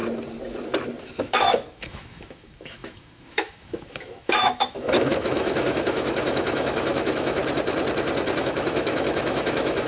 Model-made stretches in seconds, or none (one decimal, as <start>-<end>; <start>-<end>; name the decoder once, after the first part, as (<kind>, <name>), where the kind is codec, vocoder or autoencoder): 1.0-7.4 (autoencoder, DAC-VAE); 8.4-9.9